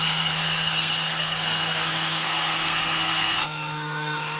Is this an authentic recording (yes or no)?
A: no